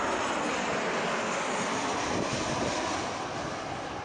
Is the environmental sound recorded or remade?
recorded